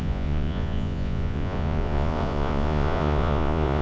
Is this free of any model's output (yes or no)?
no